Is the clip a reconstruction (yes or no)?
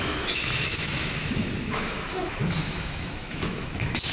yes